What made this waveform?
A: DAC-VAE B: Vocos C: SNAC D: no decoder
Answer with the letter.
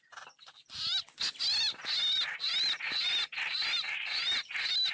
D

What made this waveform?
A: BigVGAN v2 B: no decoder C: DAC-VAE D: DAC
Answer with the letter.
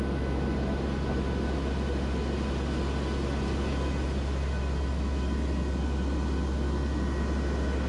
B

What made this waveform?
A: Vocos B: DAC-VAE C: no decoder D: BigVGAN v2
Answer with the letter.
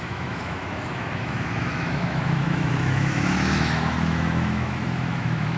B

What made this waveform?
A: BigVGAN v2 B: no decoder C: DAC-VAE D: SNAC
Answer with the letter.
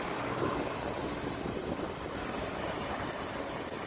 B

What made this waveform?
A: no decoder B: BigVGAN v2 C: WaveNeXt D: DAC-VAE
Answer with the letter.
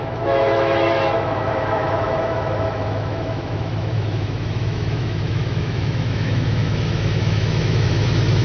D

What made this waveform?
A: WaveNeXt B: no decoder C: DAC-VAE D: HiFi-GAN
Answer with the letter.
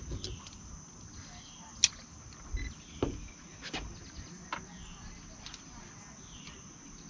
B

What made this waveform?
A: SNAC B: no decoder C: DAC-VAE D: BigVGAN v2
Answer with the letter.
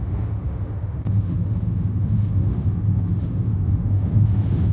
C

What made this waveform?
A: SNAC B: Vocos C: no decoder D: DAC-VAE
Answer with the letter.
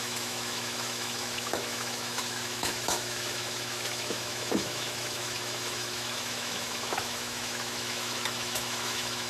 D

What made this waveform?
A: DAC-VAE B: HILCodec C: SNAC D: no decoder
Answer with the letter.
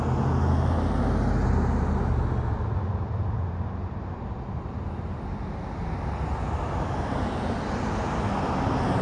D